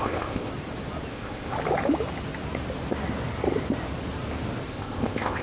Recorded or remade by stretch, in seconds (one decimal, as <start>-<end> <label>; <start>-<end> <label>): 0.0-0.5 remade; 0.5-1.1 recorded; 1.1-1.5 remade; 1.5-4.7 recorded; 4.7-5.4 remade